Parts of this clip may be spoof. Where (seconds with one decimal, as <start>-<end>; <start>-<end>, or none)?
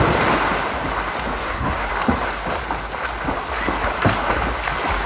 1.4-1.9